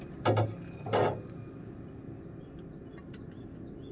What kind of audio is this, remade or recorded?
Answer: recorded